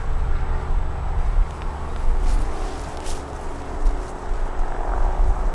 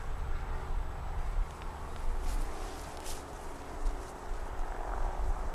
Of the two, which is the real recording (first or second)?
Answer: first